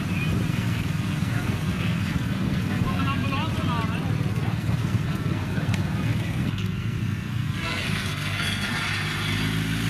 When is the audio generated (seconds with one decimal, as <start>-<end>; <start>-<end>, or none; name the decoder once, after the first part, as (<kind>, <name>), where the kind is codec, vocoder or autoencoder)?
0.5-3.0 (codec, SNAC); 4.3-8.7